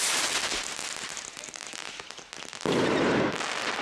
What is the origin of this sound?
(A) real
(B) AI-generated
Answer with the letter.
A